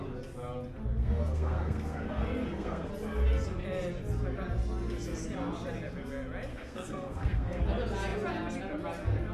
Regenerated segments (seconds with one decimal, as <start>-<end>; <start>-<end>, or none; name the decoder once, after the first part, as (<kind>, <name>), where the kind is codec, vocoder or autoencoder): 1.0-2.9 (codec, SNAC); 6.5-7.6